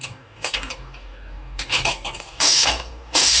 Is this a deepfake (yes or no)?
yes